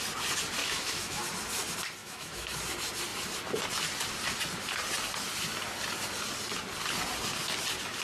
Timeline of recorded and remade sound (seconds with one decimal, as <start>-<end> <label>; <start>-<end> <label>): 0.0-0.6 recorded; 0.6-1.2 remade; 1.2-2.0 recorded; 2.0-2.6 remade; 2.6-8.0 recorded